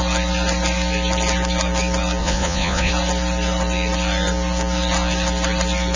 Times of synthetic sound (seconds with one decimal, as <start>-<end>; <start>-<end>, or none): 2.2-2.9